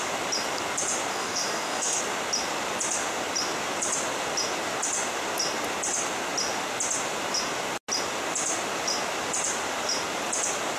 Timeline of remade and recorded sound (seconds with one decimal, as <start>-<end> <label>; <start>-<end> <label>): 0.0-1.1 recorded; 1.1-2.0 remade; 2.0-10.8 recorded